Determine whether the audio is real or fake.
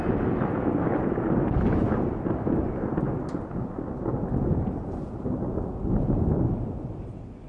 real